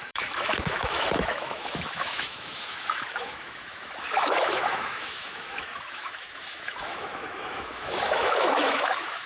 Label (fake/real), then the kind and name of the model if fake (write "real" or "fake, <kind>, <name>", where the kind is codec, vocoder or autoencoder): fake, autoencoder, DAC-VAE